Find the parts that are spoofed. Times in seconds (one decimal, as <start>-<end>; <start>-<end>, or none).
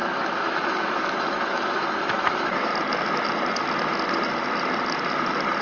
0.0-2.7